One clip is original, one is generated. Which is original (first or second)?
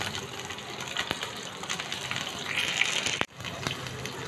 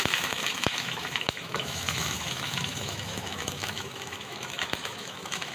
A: first